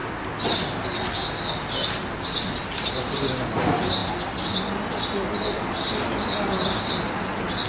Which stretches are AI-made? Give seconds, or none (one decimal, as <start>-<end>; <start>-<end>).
none